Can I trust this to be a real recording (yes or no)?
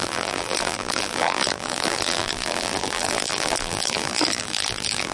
no